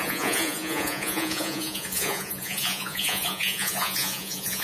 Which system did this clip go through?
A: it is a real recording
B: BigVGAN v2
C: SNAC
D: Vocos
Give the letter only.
D